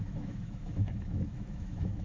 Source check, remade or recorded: remade